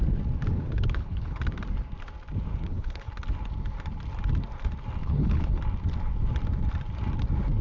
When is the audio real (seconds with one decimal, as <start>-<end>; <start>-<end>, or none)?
0.0-0.5; 1.4-2.5; 3.1-5.0; 5.6-7.6